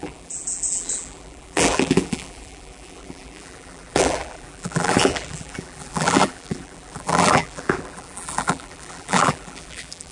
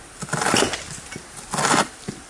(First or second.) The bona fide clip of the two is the second